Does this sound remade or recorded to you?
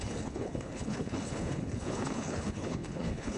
remade